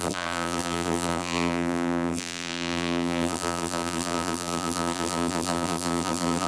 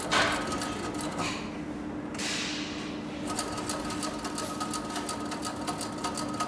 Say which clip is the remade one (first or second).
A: first